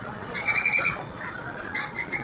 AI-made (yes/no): yes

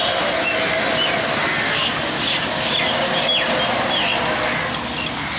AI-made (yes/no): no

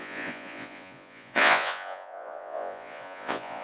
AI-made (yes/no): yes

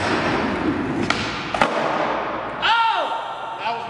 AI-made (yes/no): no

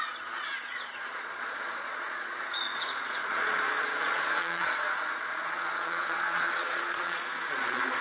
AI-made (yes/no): yes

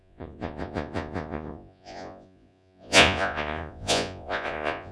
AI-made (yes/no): yes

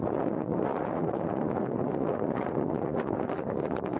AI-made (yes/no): yes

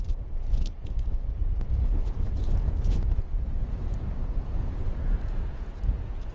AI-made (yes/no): yes